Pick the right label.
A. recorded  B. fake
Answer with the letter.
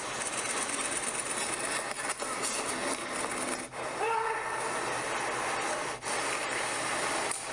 A